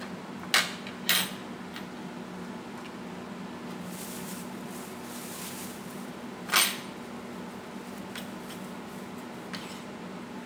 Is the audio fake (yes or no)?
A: no